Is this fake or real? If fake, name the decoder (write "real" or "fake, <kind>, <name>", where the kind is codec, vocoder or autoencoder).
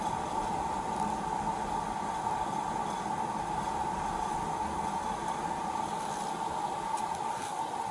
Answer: real